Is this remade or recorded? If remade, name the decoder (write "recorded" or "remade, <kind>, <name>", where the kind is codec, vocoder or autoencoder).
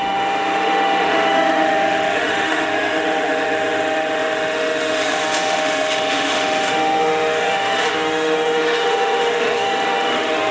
remade, autoencoder, DAC-VAE